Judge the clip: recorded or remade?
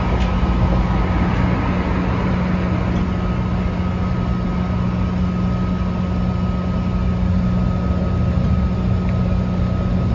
recorded